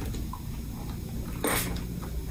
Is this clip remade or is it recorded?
recorded